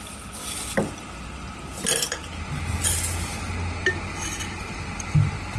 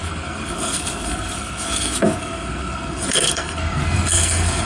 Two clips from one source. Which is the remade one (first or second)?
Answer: second